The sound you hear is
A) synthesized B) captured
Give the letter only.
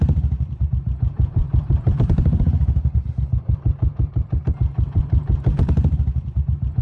A